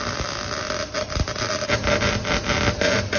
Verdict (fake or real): real